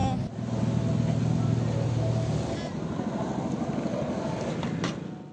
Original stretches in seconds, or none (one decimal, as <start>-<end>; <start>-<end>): 0.0-5.3